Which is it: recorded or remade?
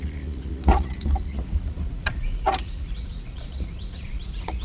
remade